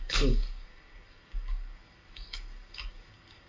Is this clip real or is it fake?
fake